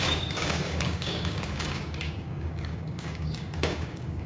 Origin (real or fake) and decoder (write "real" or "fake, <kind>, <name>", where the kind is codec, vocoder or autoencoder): fake, codec, DAC